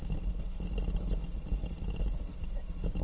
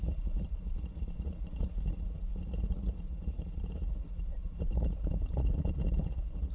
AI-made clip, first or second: second